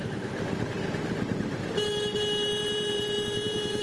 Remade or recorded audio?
remade